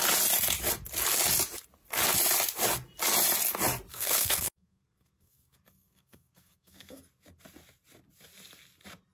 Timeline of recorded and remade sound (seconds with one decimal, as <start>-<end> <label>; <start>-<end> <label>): 0.0-3.9 recorded; 3.9-7.0 remade; 7.0-9.1 recorded